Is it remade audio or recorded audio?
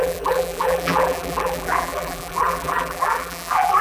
remade